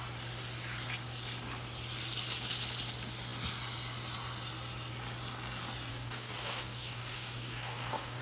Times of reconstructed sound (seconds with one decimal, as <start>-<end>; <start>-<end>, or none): 5.9-8.2